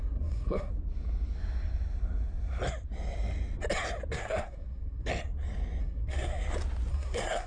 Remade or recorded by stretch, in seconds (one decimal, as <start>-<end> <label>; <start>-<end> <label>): 0.0-0.7 remade; 0.7-4.1 recorded; 4.1-5.1 remade; 5.1-5.8 recorded; 5.8-6.3 remade; 6.3-6.9 recorded; 6.9-7.5 remade